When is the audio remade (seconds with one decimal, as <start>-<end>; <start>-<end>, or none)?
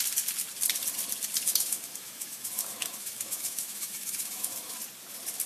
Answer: 1.5-4.8